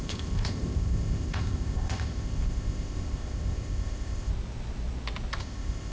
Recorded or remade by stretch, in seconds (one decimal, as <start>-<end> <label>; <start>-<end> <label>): 0.0-4.3 remade; 4.3-5.4 recorded; 5.4-5.9 remade